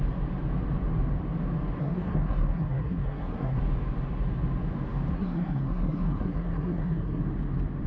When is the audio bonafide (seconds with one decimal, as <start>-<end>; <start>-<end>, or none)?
0.0-1.8; 3.6-5.1; 7.2-7.9